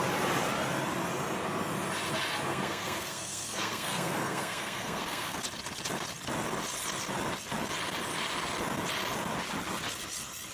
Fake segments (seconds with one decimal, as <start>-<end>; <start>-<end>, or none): 2.5-5.4